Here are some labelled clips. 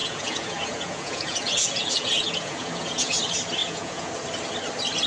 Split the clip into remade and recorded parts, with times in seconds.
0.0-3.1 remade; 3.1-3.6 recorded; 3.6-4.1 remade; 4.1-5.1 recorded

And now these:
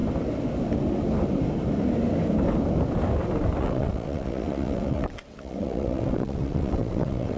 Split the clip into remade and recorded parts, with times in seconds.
0.0-3.6 recorded; 3.6-7.4 remade

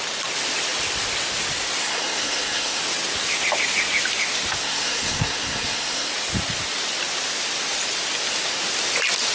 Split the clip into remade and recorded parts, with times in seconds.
0.0-1.8 recorded; 1.8-2.8 remade; 2.8-4.6 recorded; 4.6-6.1 remade; 6.1-9.3 recorded